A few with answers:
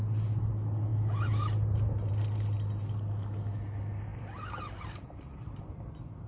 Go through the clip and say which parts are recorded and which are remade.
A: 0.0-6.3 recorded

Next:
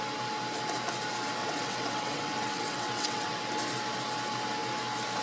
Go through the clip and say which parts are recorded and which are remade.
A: 0.0-1.4 recorded; 1.4-3.3 remade; 3.3-5.2 recorded

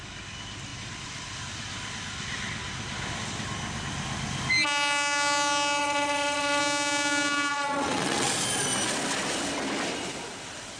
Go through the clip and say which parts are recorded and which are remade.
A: 0.0-5.8 recorded; 5.8-6.6 remade; 6.6-7.5 recorded; 7.5-8.3 remade; 8.3-10.8 recorded

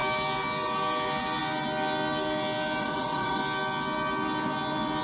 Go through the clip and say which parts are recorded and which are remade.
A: 0.0-2.8 recorded; 2.8-3.4 remade; 3.4-5.0 recorded

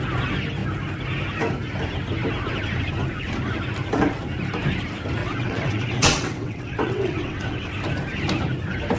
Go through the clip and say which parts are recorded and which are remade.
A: 0.0-5.2 recorded; 5.2-7.7 remade; 7.7-9.0 recorded

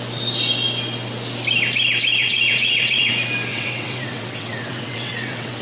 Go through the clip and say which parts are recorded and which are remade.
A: 0.0-2.2 recorded; 2.2-3.1 remade; 3.1-3.5 recorded; 3.5-5.6 remade